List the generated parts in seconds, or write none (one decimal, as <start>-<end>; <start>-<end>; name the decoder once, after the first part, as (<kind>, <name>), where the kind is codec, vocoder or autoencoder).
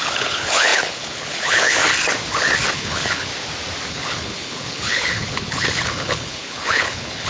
0.0-1.8 (codec, HILCodec); 2.7-3.3; 3.9-7.3